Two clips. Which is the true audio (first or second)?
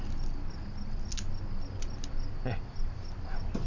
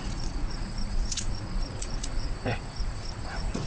first